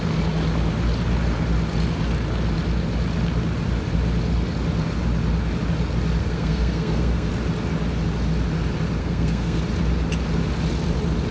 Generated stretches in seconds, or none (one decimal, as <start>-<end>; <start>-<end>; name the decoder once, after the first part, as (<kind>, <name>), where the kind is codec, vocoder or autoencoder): 6.2-7.3 (codec, SNAC); 9.0-9.6